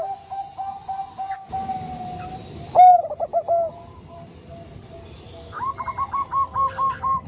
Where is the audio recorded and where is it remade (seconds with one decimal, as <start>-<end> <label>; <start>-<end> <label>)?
0.0-7.3 recorded